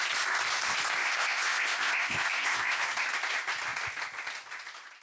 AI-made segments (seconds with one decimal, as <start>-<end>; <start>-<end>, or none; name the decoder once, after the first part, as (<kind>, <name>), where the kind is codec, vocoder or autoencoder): 1.0-2.8 (codec, ZipCodec)